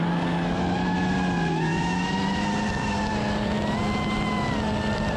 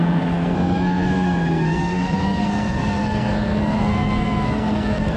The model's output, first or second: second